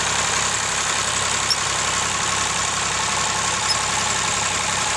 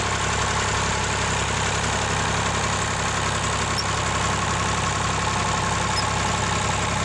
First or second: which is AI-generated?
first